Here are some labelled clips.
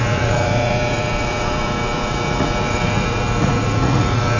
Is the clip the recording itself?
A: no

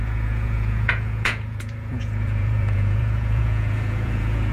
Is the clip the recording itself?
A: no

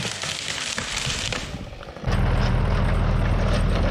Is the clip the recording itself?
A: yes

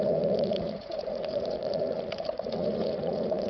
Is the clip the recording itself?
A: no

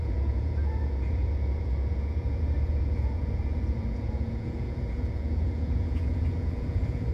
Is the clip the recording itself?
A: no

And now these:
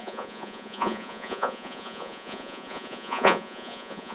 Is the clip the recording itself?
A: no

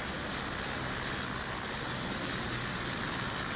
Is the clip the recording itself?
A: yes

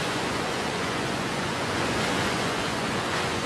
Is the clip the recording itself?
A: no